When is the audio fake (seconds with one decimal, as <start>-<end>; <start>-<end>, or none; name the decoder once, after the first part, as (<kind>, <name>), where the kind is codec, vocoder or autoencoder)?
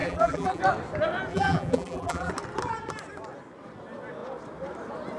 0.0-0.6 (vocoder, BigVGAN v2); 1.3-2.3